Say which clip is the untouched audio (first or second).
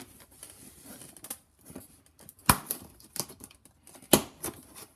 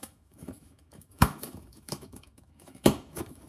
first